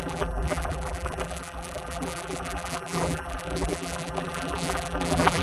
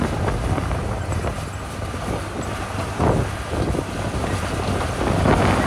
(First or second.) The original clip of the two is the second